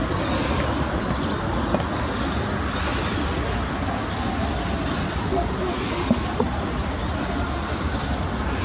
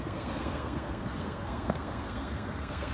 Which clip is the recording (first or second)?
first